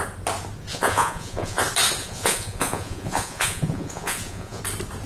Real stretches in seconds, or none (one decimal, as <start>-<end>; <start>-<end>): 0.0-0.7; 1.6-2.0; 4.6-5.1